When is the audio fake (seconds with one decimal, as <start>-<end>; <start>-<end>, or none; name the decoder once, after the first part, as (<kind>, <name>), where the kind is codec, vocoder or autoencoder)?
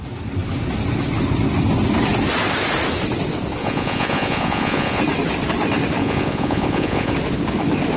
3.6-5.0 (vocoder, Vocos); 6.0-7.1